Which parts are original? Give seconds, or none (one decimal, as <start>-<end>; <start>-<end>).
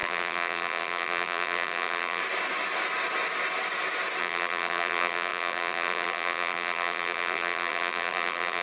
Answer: 2.2-4.2